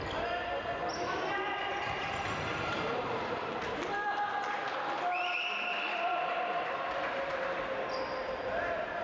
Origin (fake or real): fake